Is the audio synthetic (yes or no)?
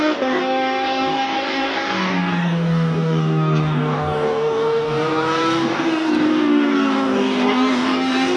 yes